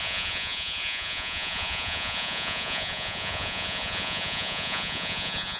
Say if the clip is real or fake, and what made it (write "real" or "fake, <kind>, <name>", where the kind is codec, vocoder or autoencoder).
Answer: fake, vocoder, Vocos